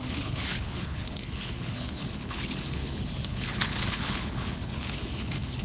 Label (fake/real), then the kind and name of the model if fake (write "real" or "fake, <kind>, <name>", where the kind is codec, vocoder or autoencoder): fake, codec, HILCodec